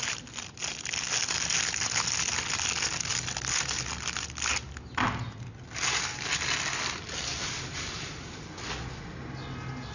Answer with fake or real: real